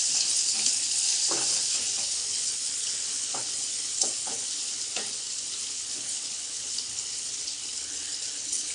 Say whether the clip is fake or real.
fake